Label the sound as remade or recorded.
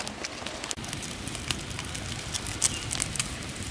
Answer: recorded